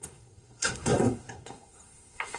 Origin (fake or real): fake